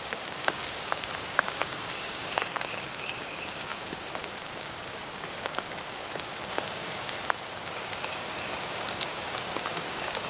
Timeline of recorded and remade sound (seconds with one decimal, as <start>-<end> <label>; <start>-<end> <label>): 0.0-10.3 remade